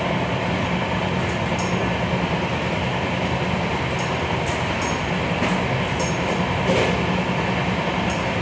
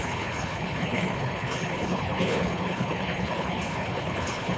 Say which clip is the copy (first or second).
second